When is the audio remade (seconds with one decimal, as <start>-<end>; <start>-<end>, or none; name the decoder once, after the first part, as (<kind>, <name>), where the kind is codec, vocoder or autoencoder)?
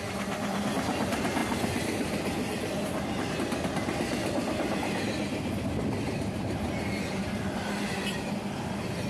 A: none